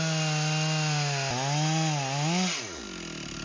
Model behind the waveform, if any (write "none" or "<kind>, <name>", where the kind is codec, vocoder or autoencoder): none